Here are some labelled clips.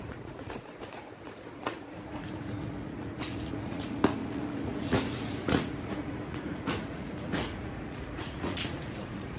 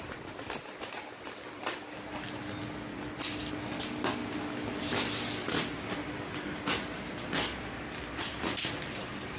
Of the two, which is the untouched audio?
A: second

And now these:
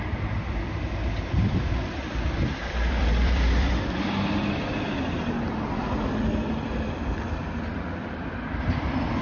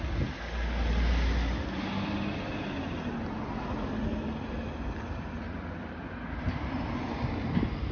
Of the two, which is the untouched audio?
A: second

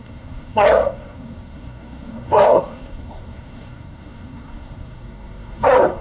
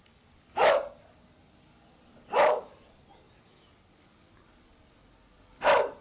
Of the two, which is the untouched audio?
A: second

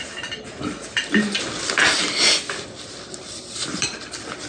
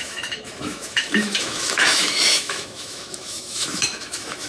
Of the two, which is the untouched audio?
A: first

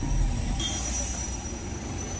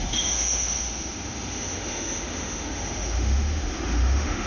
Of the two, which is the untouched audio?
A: first